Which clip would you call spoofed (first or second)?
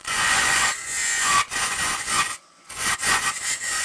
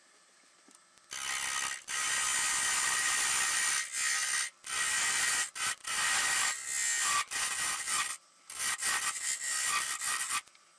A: first